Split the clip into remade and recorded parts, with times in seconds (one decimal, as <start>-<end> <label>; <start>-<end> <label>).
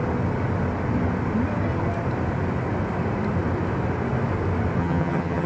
0.0-4.8 recorded; 4.8-5.5 remade